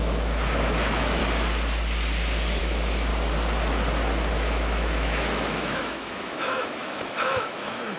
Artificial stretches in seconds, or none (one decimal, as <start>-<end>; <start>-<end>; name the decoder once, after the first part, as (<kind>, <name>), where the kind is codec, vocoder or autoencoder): 0.0-1.2 (autoencoder, DAC-VAE); 2.6-3.1; 4.3-8.0